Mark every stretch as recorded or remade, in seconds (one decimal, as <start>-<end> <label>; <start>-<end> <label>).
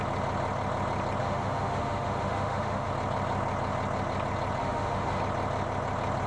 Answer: 0.0-1.2 recorded; 1.2-2.9 remade; 2.9-4.6 recorded; 4.6-5.2 remade; 5.2-6.3 recorded